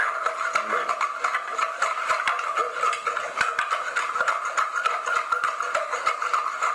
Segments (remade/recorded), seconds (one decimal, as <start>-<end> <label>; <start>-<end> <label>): 0.0-6.7 recorded